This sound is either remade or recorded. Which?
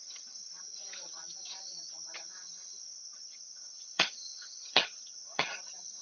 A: remade